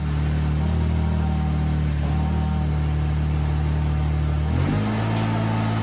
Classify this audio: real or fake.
real